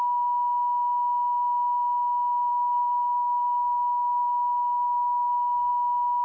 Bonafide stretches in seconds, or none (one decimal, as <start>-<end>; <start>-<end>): 0.0-2.5; 5.7-6.2